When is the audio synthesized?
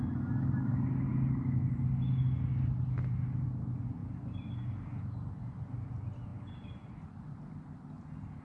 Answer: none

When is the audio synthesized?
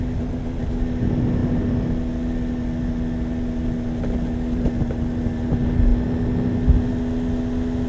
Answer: none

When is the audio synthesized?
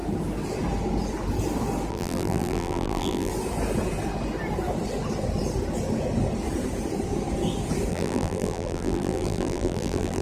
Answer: 1.9-3.3 (vocoder, BigVGAN v2); 7.9-10.2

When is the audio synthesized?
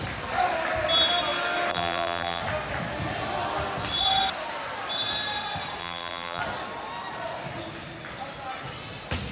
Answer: 1.7-2.4 (vocoder, BigVGAN v2); 5.8-6.4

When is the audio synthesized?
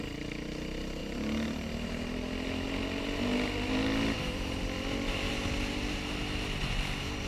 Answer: none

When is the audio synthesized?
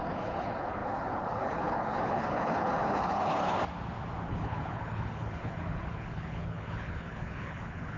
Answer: 0.0-3.6 (codec, HILCodec); 4.3-8.0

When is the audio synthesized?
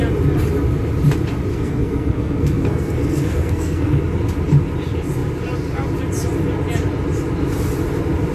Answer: 1.5-4.0 (codec, SNAC)